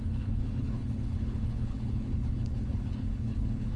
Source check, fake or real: fake